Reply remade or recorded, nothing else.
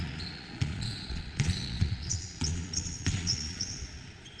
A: remade